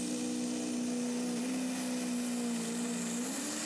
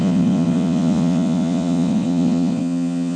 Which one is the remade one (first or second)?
second